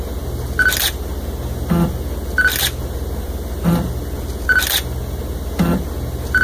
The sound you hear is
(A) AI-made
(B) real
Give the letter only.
B